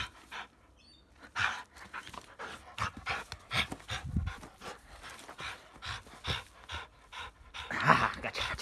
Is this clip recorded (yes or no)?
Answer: yes